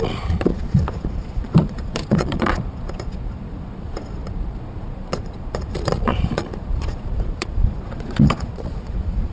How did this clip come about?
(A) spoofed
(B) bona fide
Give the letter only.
A